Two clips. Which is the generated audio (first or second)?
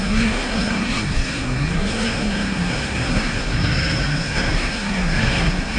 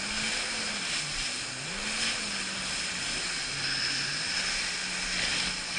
first